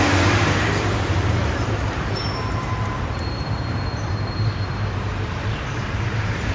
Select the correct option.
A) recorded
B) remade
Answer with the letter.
B